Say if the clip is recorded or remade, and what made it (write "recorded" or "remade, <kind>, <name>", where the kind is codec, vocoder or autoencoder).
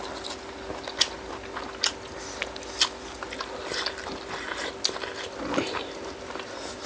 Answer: recorded